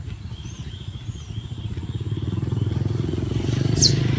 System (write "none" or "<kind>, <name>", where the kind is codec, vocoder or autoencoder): vocoder, Vocos